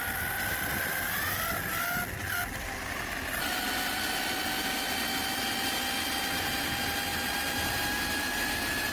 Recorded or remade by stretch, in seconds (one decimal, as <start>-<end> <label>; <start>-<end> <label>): 0.0-8.9 recorded